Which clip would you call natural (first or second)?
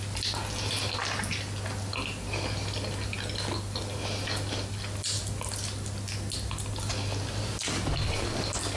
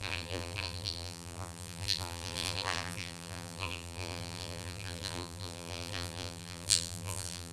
first